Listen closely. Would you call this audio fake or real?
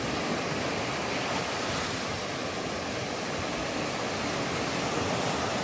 real